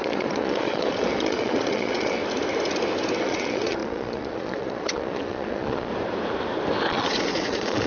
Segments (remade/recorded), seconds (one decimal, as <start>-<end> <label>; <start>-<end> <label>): 0.0-2.2 remade; 2.2-3.2 recorded; 3.2-5.9 remade; 5.9-6.9 recorded; 6.9-7.9 remade